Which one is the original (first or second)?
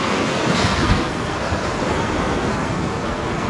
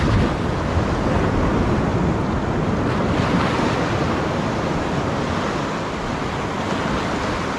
second